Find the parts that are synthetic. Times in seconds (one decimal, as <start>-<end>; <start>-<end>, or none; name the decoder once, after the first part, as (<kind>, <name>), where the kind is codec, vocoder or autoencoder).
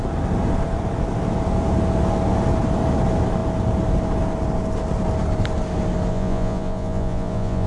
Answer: 6.1-7.7 (vocoder, Vocos)